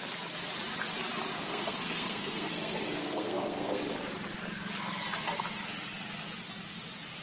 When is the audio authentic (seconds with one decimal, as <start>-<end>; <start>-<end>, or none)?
0.0-1.3; 3.8-7.2